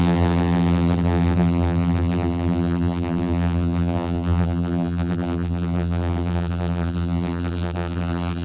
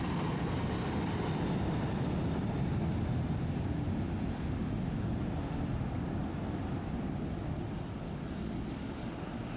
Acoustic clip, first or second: second